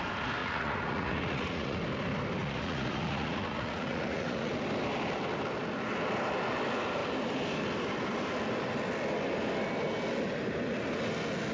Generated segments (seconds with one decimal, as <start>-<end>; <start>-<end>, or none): 0.4-1.8; 2.4-4.5